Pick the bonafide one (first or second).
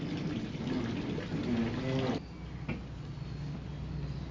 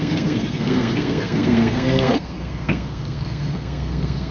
first